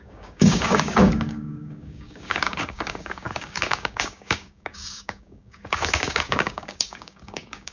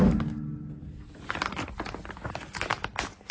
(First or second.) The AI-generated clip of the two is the first